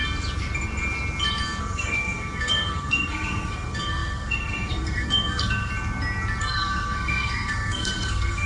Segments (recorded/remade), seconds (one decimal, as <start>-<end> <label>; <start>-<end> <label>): 0.0-1.6 recorded; 1.6-5.7 remade; 5.7-6.4 recorded; 6.4-8.5 remade